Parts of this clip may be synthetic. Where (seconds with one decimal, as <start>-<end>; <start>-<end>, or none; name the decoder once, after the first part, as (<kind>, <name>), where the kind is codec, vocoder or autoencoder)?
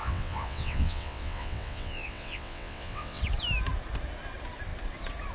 0.0-3.2 (vocoder, WaveNeXt)